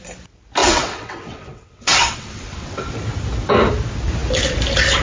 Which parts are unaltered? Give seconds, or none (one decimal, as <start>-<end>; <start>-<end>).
0.0-0.6; 2.9-5.0